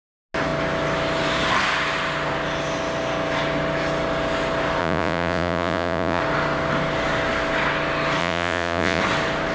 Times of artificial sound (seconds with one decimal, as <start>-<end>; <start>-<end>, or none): 4.8-6.2; 8.2-9.0